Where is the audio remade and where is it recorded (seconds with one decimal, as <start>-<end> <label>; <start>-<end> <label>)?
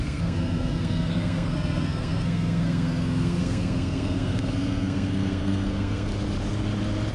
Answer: 0.0-6.1 remade; 6.1-7.1 recorded